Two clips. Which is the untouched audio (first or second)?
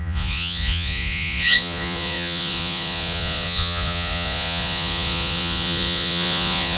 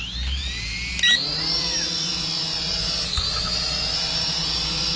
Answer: second